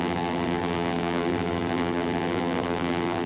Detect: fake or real fake